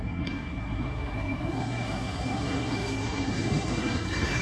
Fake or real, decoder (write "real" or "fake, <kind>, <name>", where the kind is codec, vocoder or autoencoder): fake, codec, SNAC